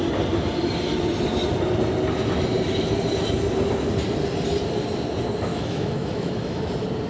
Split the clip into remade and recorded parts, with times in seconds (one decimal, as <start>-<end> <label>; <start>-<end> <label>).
0.0-5.5 recorded; 5.5-6.6 remade; 6.6-7.1 recorded